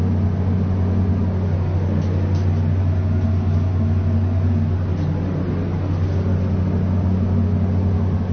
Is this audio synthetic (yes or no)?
no